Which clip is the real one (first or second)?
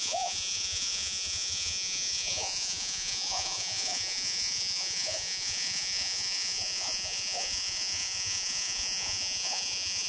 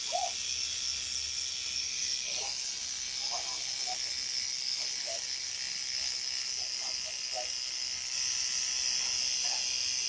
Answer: second